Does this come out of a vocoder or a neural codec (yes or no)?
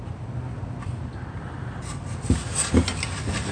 no